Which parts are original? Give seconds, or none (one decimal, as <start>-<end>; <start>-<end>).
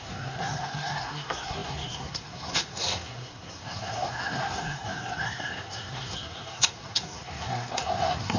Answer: none